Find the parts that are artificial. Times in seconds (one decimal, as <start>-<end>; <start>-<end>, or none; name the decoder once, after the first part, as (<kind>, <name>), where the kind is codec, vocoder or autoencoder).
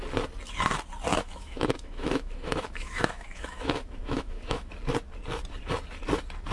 1.1-4.7 (autoencoder, DAC-VAE)